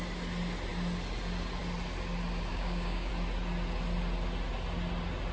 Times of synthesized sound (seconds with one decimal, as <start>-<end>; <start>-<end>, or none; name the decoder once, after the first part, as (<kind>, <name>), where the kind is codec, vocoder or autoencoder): 2.5-3.1 (codec, DAC)